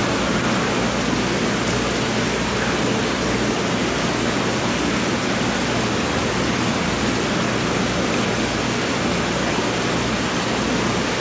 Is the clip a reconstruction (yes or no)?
no